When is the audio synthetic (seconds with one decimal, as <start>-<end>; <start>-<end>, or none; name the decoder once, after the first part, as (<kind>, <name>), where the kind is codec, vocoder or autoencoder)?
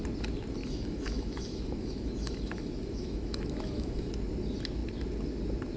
0.6-4.1 (autoencoder, DAC-VAE)